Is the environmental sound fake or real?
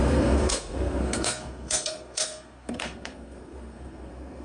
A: fake